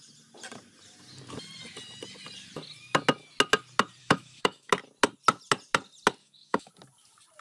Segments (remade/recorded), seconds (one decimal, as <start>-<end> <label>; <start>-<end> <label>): 0.0-4.0 recorded; 4.0-4.7 remade; 4.7-6.2 recorded; 6.2-6.7 remade; 6.7-7.4 recorded